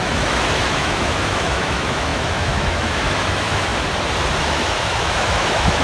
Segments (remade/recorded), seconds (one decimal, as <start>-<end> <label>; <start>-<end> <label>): 0.0-3.7 remade; 3.7-4.4 recorded; 4.4-5.8 remade